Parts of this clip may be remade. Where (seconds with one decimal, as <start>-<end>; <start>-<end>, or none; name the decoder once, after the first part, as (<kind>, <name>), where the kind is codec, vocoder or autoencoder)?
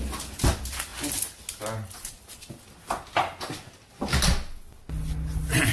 none